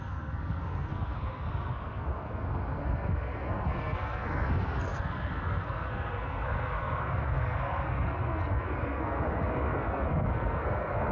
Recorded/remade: remade